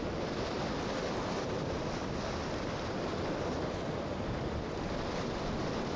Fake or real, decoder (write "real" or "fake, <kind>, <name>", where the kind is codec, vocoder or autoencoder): real